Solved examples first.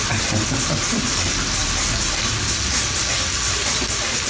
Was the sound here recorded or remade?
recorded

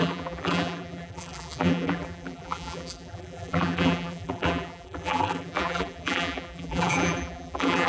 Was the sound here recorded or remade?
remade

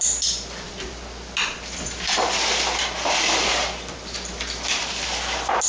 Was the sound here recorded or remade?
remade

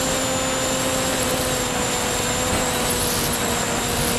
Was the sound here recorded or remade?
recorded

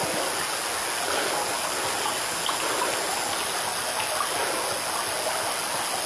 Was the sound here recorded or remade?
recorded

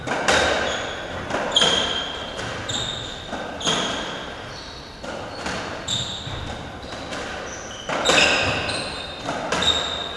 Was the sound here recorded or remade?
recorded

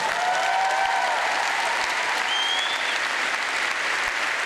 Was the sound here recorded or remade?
recorded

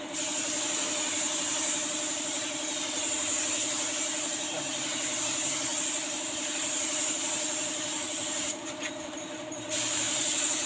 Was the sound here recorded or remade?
remade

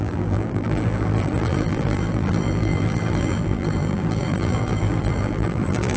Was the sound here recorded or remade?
remade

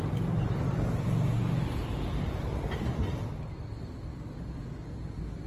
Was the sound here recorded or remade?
recorded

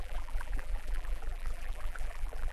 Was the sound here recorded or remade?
remade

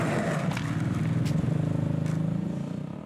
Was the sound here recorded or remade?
recorded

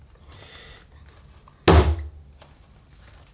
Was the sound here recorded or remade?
recorded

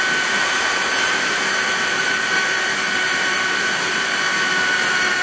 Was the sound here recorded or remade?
remade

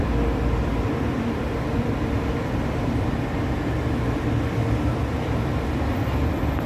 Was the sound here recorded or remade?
remade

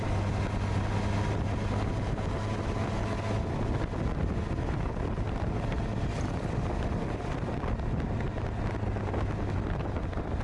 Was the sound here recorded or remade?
recorded